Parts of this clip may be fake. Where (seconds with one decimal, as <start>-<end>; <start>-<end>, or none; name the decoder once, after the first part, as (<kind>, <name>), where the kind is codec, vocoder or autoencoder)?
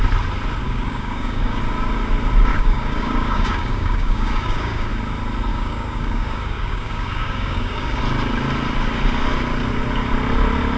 0.6-1.6 (codec, DAC); 2.5-4.9; 5.5-8.0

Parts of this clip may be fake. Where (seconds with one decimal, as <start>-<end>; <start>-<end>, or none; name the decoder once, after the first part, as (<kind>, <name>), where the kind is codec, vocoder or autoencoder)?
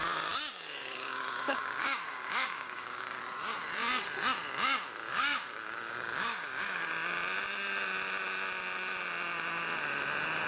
0.8-3.2 (codec, DAC); 5.1-6.9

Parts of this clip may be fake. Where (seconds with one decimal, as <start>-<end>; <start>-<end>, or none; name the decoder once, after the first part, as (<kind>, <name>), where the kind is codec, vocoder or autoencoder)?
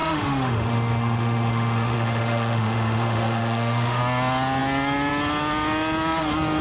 0.0-4.0 (autoencoder, DAC-VAE)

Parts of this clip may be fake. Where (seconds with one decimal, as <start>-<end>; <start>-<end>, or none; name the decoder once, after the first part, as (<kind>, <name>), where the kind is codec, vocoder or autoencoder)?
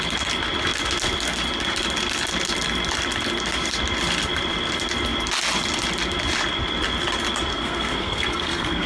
7.5-8.9 (codec, SNAC)